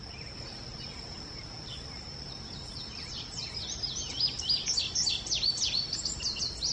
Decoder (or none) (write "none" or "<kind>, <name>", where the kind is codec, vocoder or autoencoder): none